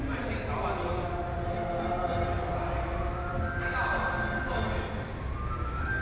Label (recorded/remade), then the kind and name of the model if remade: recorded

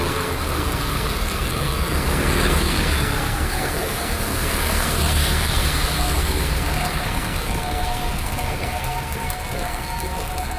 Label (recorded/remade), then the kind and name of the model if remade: remade, codec, SNAC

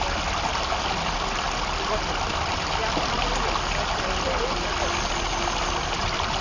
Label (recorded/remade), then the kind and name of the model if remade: recorded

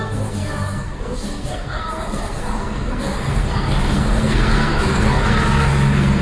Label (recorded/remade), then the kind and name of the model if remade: remade, codec, SNAC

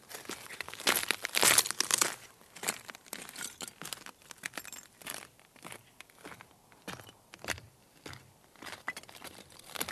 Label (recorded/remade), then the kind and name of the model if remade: recorded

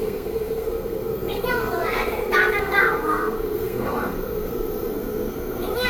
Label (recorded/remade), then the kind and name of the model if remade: remade, codec, SNAC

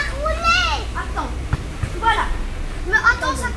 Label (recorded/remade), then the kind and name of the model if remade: recorded